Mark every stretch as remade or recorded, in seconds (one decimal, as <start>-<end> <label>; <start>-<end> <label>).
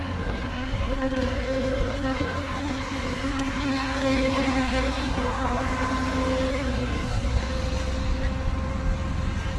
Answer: 0.0-5.7 remade; 5.7-6.5 recorded; 6.5-7.5 remade; 7.5-9.6 recorded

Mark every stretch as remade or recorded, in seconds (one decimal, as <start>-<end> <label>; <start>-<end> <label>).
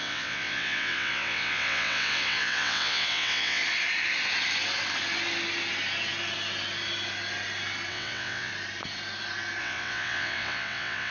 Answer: 0.0-3.6 remade; 3.6-7.9 recorded; 7.9-8.5 remade; 8.5-9.6 recorded; 9.6-11.1 remade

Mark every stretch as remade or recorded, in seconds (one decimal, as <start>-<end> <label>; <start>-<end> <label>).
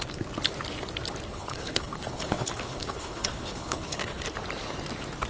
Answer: 0.0-1.3 recorded; 1.3-4.2 remade; 4.2-5.3 recorded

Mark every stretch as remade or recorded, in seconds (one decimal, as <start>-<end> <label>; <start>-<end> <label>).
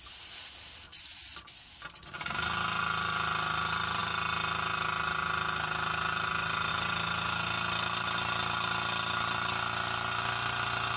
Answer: 0.0-11.0 recorded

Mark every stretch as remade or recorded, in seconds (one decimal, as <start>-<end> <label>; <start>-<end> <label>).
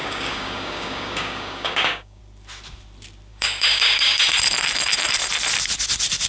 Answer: 0.0-2.2 remade; 2.2-3.3 recorded; 3.3-4.2 remade; 4.2-6.3 recorded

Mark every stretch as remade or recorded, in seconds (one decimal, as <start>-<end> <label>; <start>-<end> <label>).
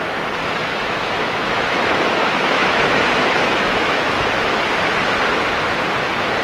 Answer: 0.0-0.6 recorded; 0.6-4.4 remade; 4.4-6.4 recorded